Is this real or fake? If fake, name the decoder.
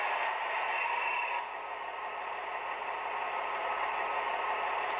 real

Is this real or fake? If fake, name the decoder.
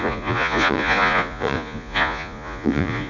fake, vocoder, Vocos